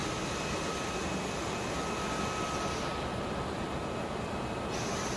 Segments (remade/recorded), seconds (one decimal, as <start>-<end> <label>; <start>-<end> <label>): 0.0-5.2 recorded